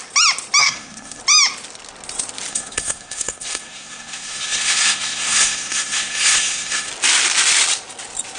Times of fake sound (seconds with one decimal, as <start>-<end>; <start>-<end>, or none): 0.6-1.2; 2.5-6.9